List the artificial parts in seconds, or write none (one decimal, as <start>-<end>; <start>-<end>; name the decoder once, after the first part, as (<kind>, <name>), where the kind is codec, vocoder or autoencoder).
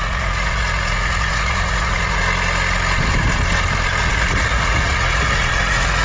0.0-2.2 (vocoder, Vocos); 4.0-6.0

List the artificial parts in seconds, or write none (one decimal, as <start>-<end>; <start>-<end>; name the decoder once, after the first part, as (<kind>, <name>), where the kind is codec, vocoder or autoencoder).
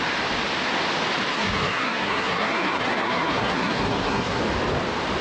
1.3-4.4 (codec, SNAC)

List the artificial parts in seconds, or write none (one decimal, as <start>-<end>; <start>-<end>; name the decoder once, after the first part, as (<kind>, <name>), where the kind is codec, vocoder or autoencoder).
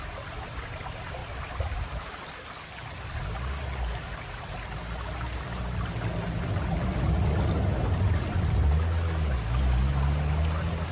none